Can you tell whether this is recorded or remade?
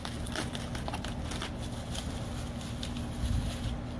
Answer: recorded